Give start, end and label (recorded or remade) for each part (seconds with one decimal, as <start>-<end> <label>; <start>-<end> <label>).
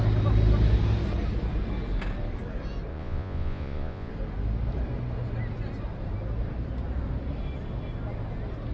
0.0-2.9 recorded; 2.9-4.1 remade; 4.1-8.7 recorded